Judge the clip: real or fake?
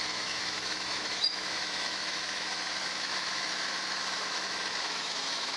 fake